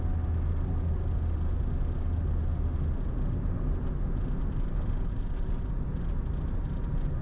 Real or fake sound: real